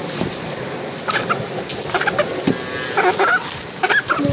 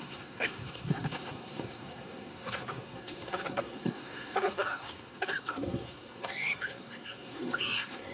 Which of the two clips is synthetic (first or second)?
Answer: second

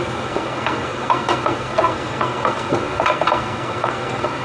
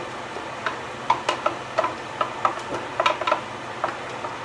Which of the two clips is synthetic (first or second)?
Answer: first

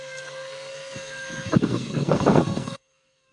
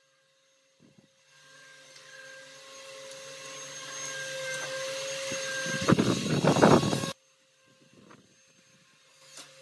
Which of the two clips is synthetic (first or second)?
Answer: first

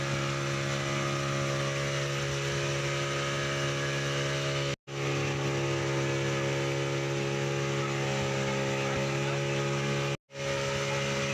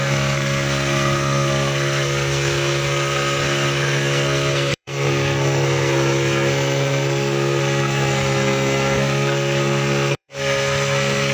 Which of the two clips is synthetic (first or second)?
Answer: second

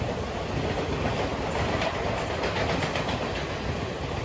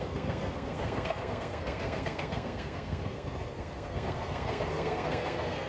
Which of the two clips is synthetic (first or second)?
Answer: second